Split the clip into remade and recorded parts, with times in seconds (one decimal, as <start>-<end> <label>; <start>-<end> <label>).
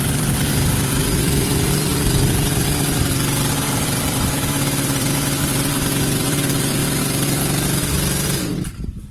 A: 0.0-6.8 remade; 6.8-9.1 recorded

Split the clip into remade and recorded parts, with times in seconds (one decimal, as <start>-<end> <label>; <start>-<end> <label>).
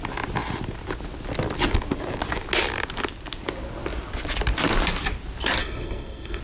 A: 0.0-5.6 recorded; 5.6-6.4 remade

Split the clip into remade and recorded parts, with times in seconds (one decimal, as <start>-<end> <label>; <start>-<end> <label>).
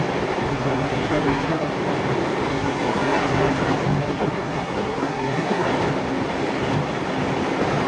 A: 0.0-0.5 recorded; 0.5-1.7 remade; 1.7-2.5 recorded; 2.5-3.5 remade; 3.5-4.0 recorded; 4.0-5.7 remade; 5.7-7.9 recorded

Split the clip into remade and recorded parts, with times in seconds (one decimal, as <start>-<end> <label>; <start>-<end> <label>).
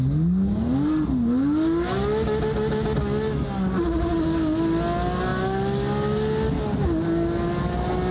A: 0.0-8.1 recorded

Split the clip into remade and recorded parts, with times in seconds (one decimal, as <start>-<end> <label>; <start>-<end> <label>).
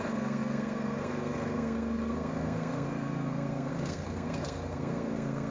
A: 0.0-5.5 remade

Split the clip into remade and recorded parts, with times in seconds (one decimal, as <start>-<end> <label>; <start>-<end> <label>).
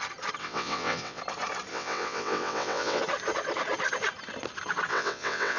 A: 0.0-0.4 recorded; 0.4-1.2 remade; 1.2-1.7 recorded; 1.7-3.0 remade; 3.0-4.9 recorded; 4.9-5.6 remade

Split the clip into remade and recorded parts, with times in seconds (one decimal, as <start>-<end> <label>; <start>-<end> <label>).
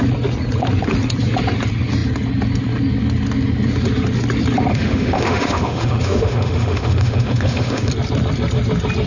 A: 0.0-4.7 recorded; 4.7-7.9 remade; 7.9-9.1 recorded